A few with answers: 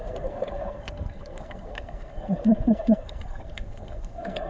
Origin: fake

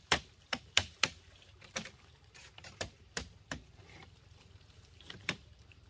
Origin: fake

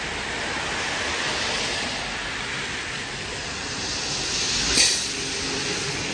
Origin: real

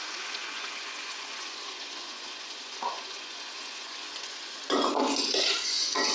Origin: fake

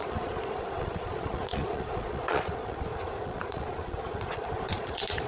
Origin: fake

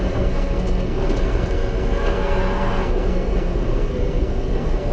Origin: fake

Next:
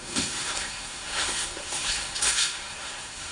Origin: fake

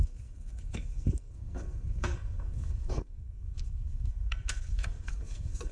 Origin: fake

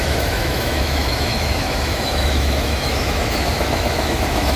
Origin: fake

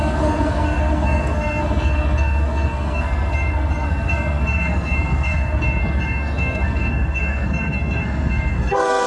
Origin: fake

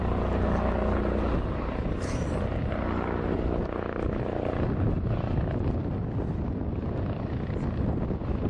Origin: real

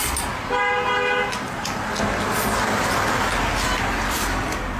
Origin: real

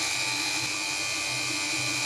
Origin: real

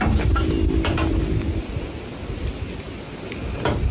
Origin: real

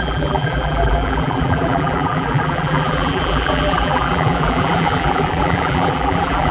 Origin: fake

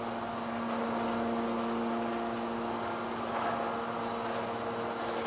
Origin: real